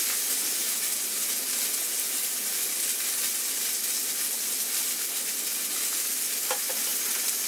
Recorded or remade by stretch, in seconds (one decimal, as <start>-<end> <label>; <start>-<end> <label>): 0.0-7.5 recorded